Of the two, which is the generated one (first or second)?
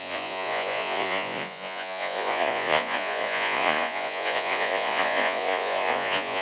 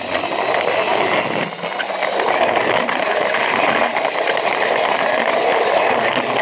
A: first